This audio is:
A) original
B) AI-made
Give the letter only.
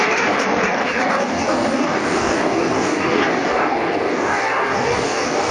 B